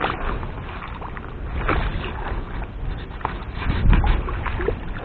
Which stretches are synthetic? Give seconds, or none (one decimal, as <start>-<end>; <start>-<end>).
none